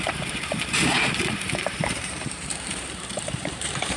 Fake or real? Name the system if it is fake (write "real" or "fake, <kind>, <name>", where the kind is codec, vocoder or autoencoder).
fake, vocoder, BigVGAN v2